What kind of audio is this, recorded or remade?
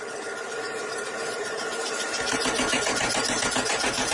recorded